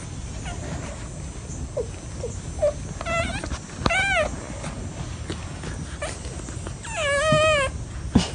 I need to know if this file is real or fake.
real